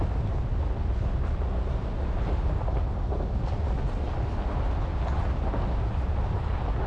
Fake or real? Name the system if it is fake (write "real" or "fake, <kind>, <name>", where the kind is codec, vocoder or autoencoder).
real